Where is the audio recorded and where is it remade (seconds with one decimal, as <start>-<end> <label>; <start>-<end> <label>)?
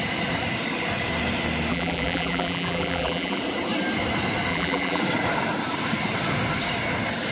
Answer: 0.0-1.7 recorded; 1.7-3.4 remade; 3.4-4.5 recorded; 4.5-5.0 remade; 5.0-7.3 recorded